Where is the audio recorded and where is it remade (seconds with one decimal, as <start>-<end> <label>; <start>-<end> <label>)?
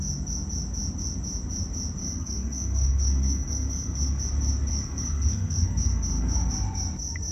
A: 0.0-2.0 recorded; 2.0-4.2 remade; 4.2-4.7 recorded; 4.7-6.5 remade; 6.5-7.3 recorded